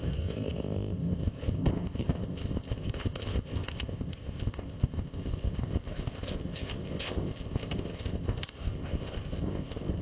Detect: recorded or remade remade